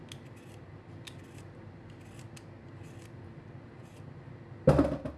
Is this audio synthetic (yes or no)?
no